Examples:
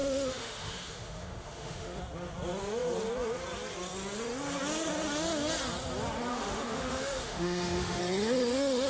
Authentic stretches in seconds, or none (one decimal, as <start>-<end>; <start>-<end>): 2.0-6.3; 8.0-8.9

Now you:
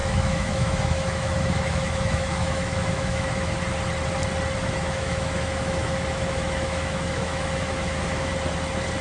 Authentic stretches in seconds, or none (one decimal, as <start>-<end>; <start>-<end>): 3.5-4.6; 8.3-9.0

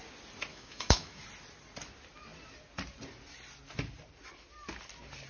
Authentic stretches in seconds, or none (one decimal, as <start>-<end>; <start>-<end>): 0.0-0.5; 1.2-5.3

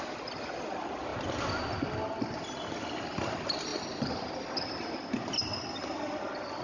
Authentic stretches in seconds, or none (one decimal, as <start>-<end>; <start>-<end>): 0.0-6.6